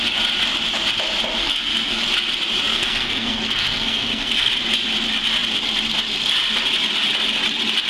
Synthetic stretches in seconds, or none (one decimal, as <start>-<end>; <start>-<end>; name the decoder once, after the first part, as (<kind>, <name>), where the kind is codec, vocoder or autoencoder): 1.4-2.0 (codec, SNAC); 2.7-4.5